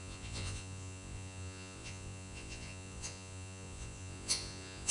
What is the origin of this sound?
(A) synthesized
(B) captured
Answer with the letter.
A